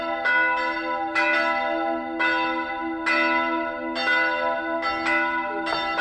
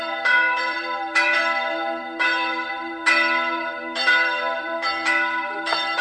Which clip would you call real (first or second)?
first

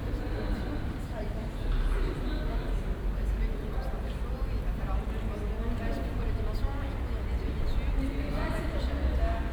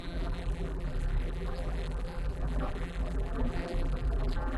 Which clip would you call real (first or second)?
first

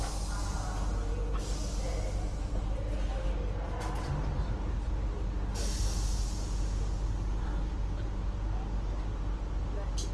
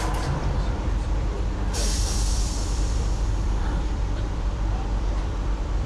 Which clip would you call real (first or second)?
first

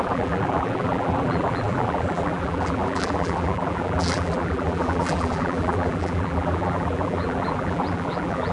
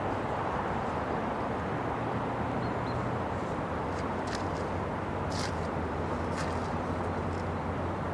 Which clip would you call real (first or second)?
second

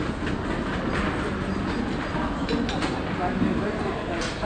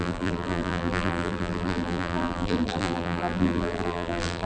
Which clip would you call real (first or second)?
first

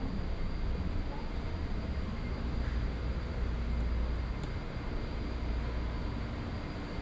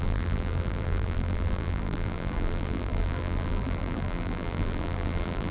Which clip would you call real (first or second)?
first